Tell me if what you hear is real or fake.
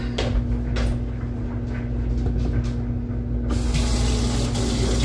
real